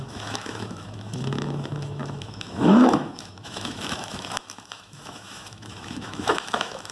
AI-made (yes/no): yes